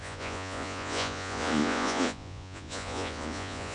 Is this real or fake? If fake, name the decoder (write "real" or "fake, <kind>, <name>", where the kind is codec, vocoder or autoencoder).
fake, vocoder, Vocos